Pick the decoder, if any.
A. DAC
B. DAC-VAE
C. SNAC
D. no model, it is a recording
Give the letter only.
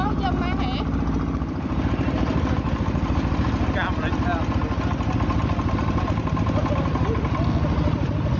D